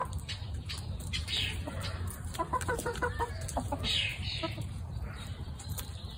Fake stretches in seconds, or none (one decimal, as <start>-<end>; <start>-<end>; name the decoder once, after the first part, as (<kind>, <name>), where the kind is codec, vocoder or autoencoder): 0.0-3.3 (vocoder, BigVGAN v2); 4.1-5.8